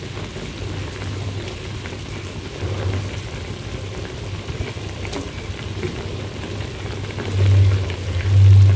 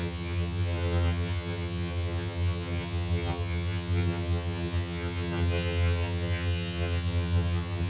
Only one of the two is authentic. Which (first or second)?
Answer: first